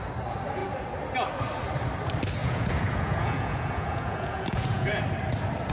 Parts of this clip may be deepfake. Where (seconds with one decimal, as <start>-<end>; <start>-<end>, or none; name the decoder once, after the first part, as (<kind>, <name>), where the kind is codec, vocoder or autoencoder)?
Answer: 2.4-5.0 (vocoder, Vocos)